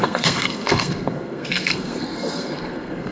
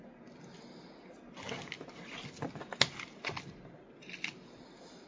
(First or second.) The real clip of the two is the second